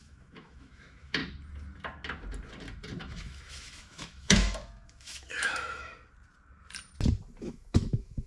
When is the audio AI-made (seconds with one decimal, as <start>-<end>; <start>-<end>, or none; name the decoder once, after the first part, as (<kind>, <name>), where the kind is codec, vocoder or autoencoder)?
0.0-1.2 (autoencoder, DAC-VAE); 3.0-5.9; 7.4-8.3